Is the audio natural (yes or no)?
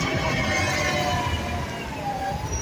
yes